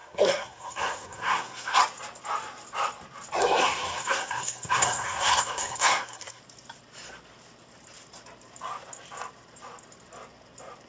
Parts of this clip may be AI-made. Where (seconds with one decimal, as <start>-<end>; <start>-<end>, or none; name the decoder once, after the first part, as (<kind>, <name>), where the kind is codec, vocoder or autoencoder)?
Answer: 0.0-1.8 (codec, SNAC); 3.4-6.4